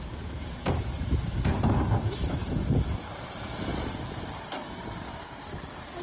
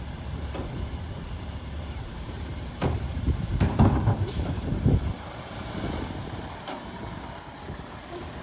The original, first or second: first